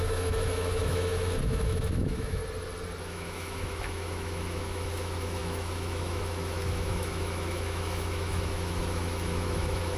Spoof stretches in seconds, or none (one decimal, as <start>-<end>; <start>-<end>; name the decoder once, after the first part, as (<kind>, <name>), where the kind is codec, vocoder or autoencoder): 0.0-2.4 (autoencoder, DAC-VAE); 3.0-10.0